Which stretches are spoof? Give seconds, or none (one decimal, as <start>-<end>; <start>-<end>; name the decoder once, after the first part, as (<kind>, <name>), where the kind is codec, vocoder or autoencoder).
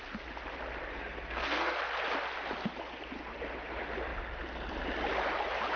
0.9-1.8 (codec, SNAC)